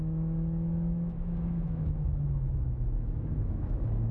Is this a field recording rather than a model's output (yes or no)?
no